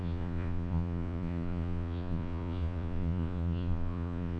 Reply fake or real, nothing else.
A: fake